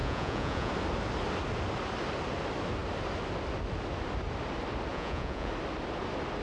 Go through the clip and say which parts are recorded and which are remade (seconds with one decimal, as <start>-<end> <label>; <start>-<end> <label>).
0.0-0.7 remade; 0.7-4.9 recorded; 4.9-5.5 remade; 5.5-6.4 recorded